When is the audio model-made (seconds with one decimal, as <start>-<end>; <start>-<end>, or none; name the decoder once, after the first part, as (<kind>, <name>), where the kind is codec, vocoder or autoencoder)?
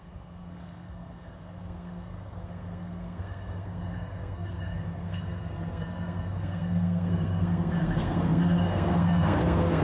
0.0-9.8 (codec, SNAC)